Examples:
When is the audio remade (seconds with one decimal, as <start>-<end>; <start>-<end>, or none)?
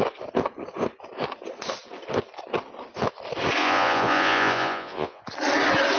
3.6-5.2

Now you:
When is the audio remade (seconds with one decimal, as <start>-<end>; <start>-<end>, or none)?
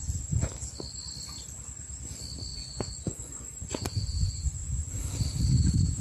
2.5-4.9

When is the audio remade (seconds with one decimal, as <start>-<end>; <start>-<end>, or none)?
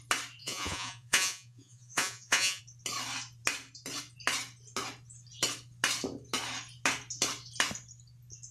0.4-2.6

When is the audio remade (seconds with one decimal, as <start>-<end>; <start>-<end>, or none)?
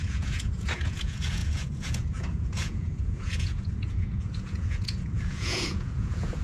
0.0-6.4